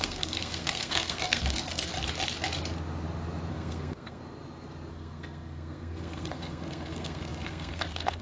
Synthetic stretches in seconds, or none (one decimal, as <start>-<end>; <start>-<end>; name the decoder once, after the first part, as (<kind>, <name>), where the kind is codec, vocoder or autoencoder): 0.0-1.9 (codec, SNAC); 3.5-4.2; 4.9-8.2